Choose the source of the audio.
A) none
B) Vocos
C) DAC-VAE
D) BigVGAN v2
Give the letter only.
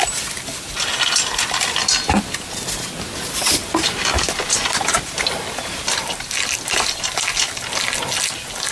A